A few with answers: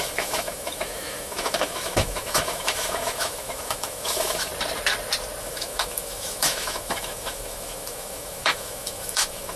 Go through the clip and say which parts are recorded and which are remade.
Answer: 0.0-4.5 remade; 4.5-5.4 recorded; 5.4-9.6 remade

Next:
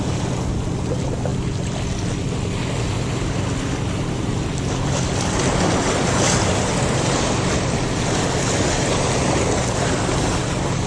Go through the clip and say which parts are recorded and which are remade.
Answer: 0.0-10.9 recorded

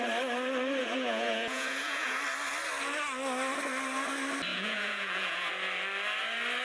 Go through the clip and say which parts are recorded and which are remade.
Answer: 0.0-0.8 recorded; 0.8-2.2 remade; 2.2-4.5 recorded; 4.5-5.5 remade; 5.5-6.6 recorded

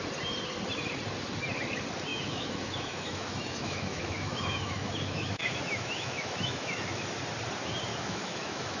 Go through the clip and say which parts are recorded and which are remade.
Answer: 0.0-2.1 recorded; 2.1-7.0 remade; 7.0-7.9 recorded; 7.9-8.8 remade

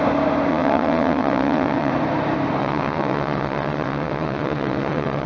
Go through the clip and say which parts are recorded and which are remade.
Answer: 0.0-0.5 recorded; 0.5-1.9 remade; 1.9-2.6 recorded; 2.6-5.3 remade

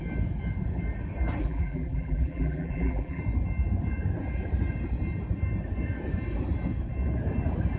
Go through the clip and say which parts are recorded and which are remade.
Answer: 0.0-1.4 recorded; 1.4-3.2 remade; 3.2-7.8 recorded

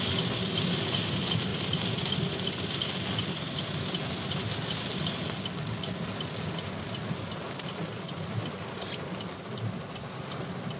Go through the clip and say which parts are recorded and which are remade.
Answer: 0.0-10.8 recorded